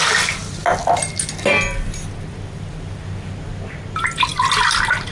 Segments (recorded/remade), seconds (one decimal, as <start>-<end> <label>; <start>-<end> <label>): 0.0-5.1 recorded